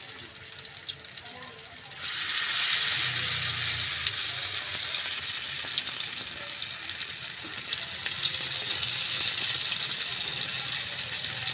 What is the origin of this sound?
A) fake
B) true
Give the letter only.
B